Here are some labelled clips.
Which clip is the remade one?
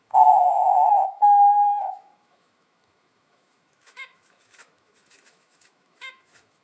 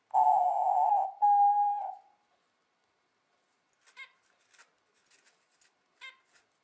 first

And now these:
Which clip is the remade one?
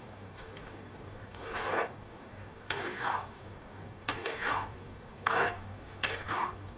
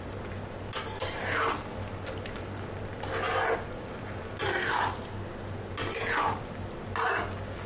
first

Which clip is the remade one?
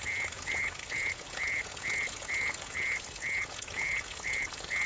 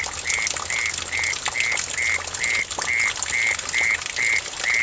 first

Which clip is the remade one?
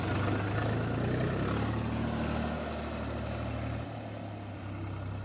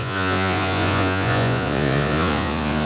second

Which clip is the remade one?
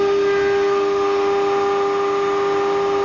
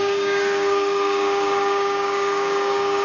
second